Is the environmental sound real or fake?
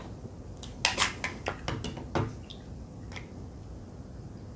real